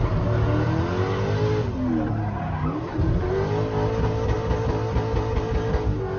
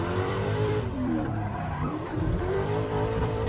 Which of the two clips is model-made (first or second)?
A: second